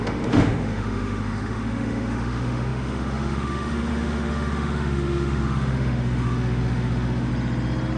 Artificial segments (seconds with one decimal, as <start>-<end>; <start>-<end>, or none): 0.0-7.3